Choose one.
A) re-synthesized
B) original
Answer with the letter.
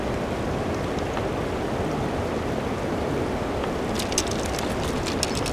B